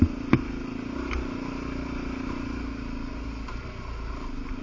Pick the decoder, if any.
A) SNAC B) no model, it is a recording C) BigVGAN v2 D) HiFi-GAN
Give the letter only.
B